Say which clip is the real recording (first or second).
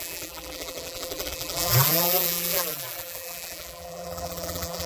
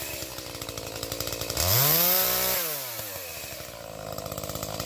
second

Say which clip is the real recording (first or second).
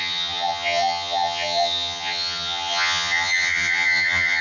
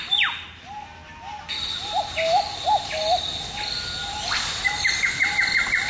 second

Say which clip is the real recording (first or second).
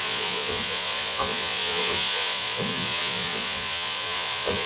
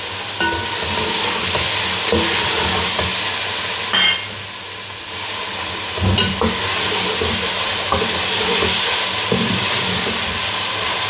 second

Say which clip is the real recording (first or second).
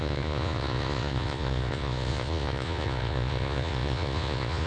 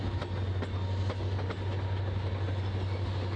second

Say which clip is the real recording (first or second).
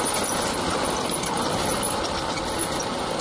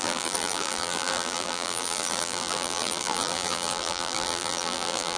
first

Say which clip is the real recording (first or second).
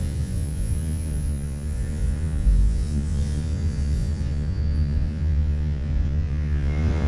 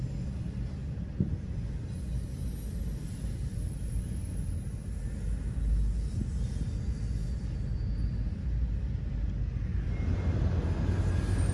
second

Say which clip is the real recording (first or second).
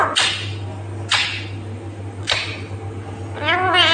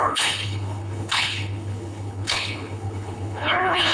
first